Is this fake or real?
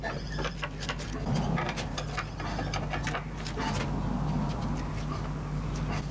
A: real